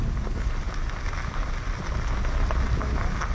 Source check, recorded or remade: recorded